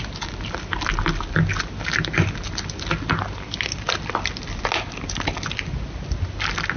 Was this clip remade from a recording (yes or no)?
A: no